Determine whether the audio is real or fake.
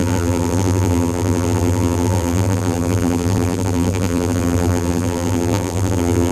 fake